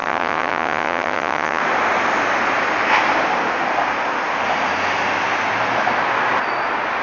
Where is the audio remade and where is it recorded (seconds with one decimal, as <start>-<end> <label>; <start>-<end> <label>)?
0.0-1.6 remade; 1.6-7.0 recorded